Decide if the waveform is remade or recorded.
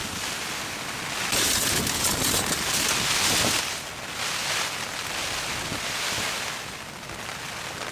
recorded